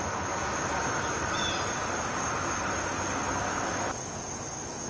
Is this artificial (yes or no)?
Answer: no